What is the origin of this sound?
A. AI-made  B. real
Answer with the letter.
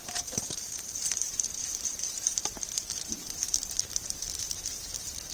A